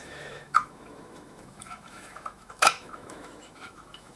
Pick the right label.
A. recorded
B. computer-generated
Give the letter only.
B